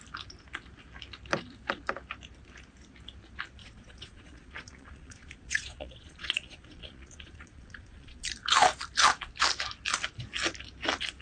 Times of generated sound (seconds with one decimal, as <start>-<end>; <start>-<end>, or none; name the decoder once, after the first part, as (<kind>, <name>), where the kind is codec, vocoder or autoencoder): 3.6-8.2 (vocoder, Vocos)

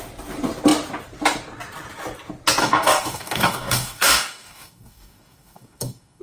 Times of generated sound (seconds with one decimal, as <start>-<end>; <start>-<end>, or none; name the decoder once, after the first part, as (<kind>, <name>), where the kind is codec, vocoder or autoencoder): 2.6-6.2 (codec, DAC)

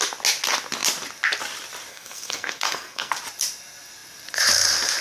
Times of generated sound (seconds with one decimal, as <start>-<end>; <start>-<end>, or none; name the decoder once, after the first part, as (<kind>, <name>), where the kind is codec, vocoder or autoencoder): 1.9-3.1 (codec, SNAC)

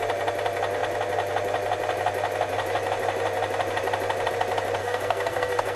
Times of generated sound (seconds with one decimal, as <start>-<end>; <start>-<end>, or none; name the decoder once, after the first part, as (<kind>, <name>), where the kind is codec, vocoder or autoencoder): 4.8-5.8 (codec, SNAC)

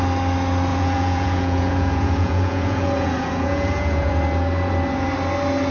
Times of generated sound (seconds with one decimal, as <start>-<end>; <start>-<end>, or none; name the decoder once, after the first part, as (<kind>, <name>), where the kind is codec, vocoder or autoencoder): 0.7-4.1 (vocoder, Vocos)